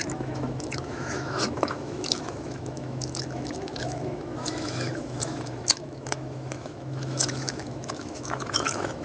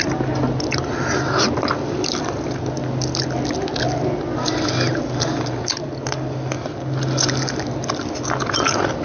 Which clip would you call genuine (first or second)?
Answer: second